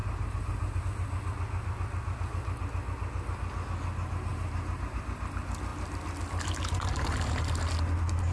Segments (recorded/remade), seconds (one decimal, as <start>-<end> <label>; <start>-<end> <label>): 0.0-0.8 remade; 0.8-4.3 recorded; 4.3-5.0 remade; 5.0-8.3 recorded